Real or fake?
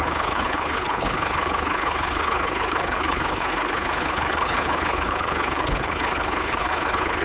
fake